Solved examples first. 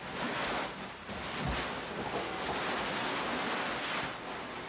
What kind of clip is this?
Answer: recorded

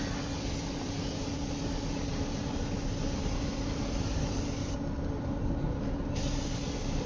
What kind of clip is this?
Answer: recorded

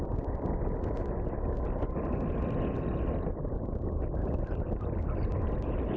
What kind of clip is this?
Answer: recorded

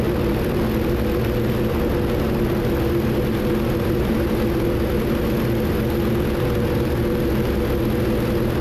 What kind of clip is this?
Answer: recorded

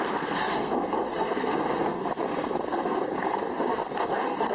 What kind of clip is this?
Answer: remade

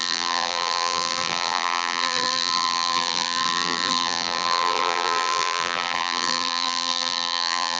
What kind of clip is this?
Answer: remade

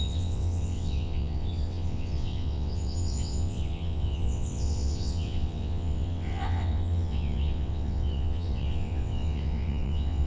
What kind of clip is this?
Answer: remade